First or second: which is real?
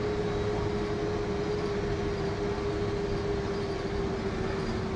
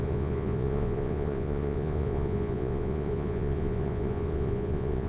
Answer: first